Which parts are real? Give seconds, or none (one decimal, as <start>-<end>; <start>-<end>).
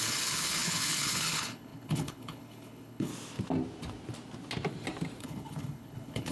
3.1-5.2